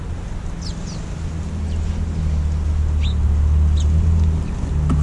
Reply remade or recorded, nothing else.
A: recorded